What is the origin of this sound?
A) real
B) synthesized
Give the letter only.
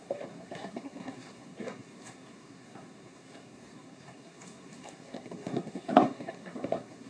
B